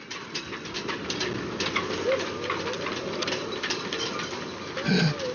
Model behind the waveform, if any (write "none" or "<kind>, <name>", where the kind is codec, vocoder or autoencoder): none